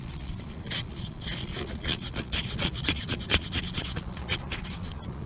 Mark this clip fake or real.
fake